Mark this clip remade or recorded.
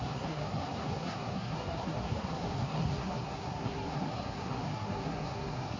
remade